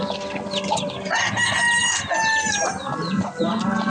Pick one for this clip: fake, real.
real